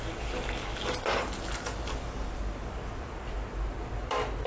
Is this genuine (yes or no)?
yes